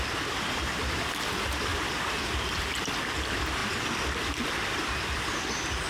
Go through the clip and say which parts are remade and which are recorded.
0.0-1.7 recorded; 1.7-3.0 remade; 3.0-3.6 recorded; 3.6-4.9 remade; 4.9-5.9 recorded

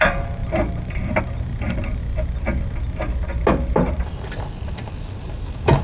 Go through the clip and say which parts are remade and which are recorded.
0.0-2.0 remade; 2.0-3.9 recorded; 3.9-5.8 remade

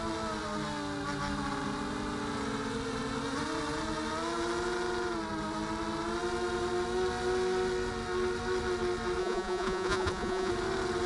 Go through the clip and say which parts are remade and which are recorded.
0.0-9.2 recorded; 9.2-10.5 remade; 10.5-11.1 recorded